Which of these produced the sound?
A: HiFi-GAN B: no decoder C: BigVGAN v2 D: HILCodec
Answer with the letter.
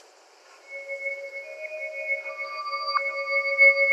B